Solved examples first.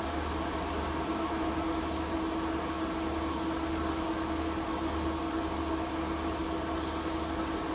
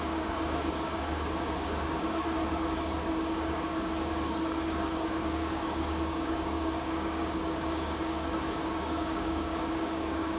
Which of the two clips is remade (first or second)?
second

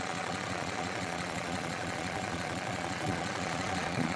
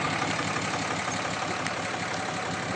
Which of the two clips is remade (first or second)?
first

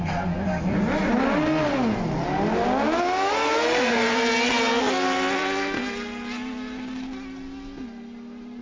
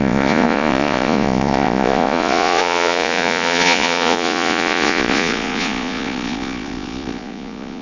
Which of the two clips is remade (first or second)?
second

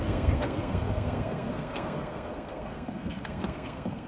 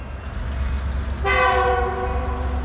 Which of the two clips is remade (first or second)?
first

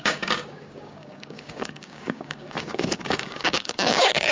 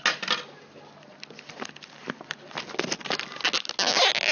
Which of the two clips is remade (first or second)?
first